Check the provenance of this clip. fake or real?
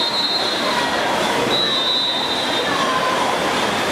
real